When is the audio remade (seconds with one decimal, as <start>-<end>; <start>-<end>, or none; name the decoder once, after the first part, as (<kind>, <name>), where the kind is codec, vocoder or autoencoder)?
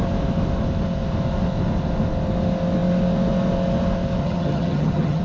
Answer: 4.2-5.2 (vocoder, HiFi-GAN)